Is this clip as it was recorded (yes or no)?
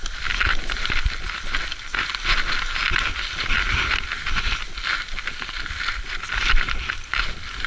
yes